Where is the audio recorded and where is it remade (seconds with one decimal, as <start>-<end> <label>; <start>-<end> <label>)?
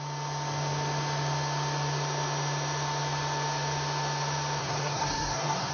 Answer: 0.0-4.6 recorded; 4.6-5.7 remade